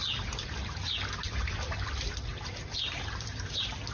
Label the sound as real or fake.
real